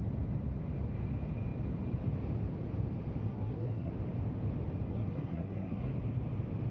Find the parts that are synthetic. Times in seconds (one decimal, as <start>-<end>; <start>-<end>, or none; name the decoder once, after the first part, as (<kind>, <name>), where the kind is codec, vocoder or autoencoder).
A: 3.2-3.9 (codec, SNAC); 4.9-5.9

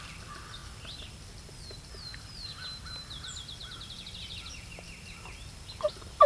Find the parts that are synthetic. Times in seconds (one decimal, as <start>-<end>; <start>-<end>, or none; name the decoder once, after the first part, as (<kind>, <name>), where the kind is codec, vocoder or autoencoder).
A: none